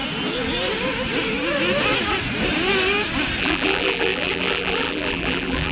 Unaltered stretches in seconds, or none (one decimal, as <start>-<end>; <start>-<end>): 0.0-3.4